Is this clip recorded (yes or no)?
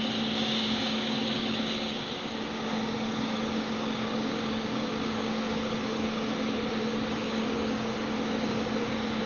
no